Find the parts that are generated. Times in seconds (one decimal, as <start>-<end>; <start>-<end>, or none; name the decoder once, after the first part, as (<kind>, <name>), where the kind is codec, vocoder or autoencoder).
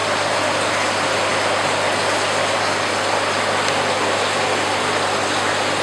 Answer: none